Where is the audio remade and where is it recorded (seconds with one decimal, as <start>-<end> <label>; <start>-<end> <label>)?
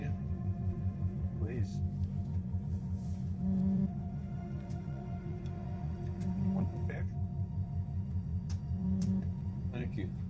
0.0-1.7 remade; 1.7-2.2 recorded; 2.2-10.3 remade